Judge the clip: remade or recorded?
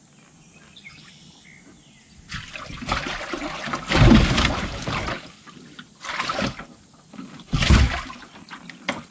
recorded